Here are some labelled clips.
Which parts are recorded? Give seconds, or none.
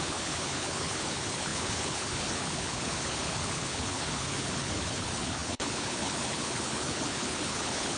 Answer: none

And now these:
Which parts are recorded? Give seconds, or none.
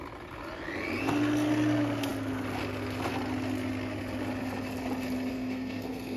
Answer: 0.0-5.3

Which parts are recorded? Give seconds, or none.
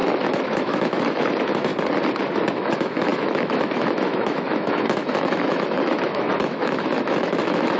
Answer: 1.7-2.5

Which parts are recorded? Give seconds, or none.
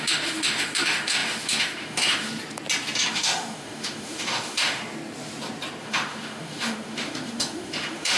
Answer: 2.3-3.1; 4.8-5.8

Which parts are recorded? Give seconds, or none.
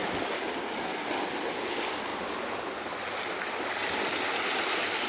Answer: 0.0-5.1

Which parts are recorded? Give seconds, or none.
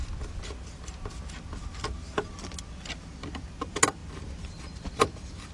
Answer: 0.0-5.5